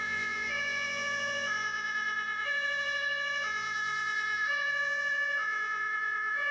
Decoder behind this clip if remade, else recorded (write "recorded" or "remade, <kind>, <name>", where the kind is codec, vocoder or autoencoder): remade, vocoder, Vocos